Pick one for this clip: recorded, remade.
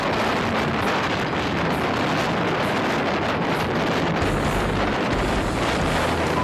recorded